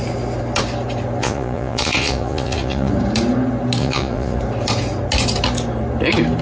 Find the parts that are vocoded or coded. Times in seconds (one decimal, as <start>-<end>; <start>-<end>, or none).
1.2-2.9; 3.8-4.4